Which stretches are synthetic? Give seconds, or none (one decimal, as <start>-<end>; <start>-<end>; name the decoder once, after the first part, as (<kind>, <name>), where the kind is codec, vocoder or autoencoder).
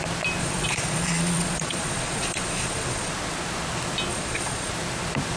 0.4-3.1 (vocoder, Vocos); 4.1-4.7